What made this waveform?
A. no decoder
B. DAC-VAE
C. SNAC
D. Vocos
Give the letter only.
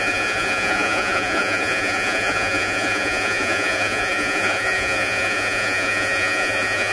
D